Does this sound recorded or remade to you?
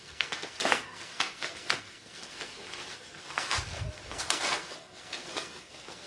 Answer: remade